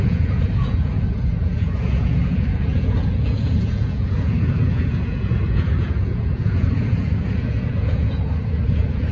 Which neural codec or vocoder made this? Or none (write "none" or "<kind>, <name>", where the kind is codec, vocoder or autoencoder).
vocoder, Vocos